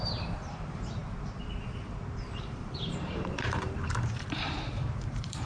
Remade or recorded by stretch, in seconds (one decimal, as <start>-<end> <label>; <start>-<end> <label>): 0.0-1.0 remade; 1.0-2.3 recorded; 2.3-5.5 remade